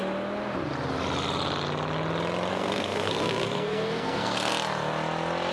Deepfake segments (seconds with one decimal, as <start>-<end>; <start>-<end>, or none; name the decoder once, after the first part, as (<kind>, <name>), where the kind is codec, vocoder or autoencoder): 2.5-4.5 (codec, SNAC)